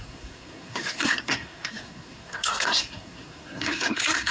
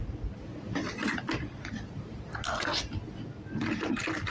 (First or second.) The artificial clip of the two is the first